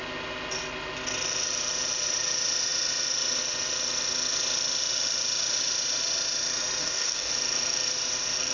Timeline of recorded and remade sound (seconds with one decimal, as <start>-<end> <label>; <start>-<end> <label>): 0.0-6.8 recorded; 6.8-7.3 remade; 7.3-8.5 recorded